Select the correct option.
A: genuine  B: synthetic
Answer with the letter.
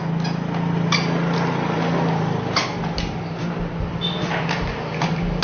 A